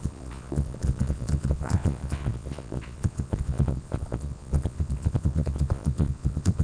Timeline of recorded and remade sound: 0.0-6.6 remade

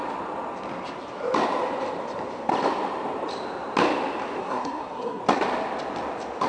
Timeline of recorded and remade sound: 0.0-4.4 recorded; 4.4-5.2 remade; 5.2-6.5 recorded

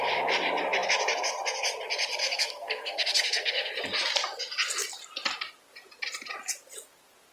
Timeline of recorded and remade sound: 0.0-2.2 recorded; 2.2-3.7 remade; 3.7-7.3 recorded

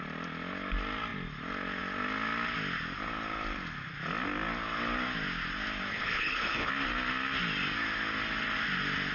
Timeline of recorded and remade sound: 0.0-5.9 recorded; 5.9-6.7 remade; 6.7-9.1 recorded

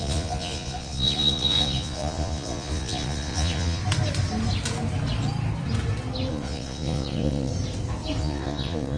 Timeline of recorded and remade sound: 0.0-3.8 remade; 3.8-6.3 recorded; 6.3-7.5 remade; 7.5-8.2 recorded; 8.2-9.0 remade

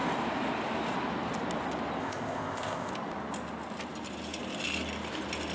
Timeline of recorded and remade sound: 0.0-2.0 recorded; 2.0-2.9 remade; 2.9-5.5 recorded

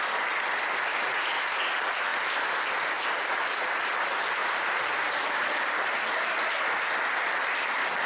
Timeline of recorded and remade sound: 0.0-0.9 recorded; 0.9-1.6 remade; 1.6-4.4 recorded; 4.4-5.4 remade; 5.4-8.1 recorded

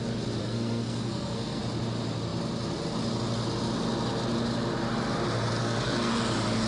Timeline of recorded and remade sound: 0.0-0.4 recorded; 0.4-1.6 remade; 1.6-5.6 recorded; 5.6-6.1 remade; 6.1-6.7 recorded